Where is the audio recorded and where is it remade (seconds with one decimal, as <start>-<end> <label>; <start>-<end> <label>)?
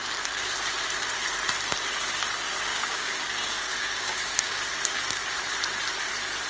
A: 0.0-2.7 recorded; 2.7-4.6 remade; 4.6-6.5 recorded